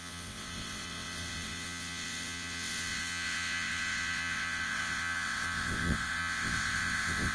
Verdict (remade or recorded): remade